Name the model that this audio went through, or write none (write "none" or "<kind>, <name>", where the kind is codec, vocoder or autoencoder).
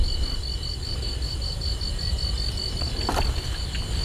none